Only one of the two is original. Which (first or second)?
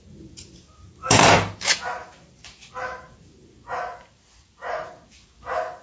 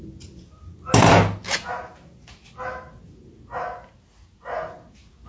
second